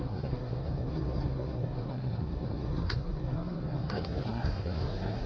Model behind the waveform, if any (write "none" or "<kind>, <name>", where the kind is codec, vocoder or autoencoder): codec, SNAC